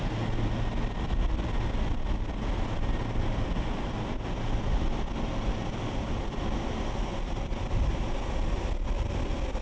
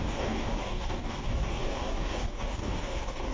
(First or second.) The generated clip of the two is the second